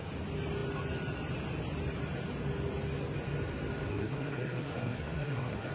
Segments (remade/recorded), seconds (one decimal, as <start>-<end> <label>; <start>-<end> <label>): 0.0-3.9 recorded; 3.9-5.7 remade